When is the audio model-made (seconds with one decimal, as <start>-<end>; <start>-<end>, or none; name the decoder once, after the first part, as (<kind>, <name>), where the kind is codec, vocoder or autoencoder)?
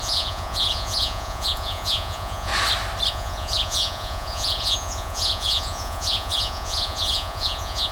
0.0-2.5 (vocoder, Vocos); 3.1-7.9